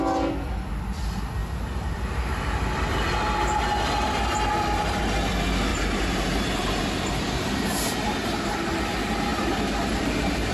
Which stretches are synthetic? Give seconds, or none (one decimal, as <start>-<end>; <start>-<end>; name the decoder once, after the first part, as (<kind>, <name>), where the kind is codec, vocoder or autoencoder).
1.4-3.1 (vocoder, BigVGAN v2); 5.7-6.8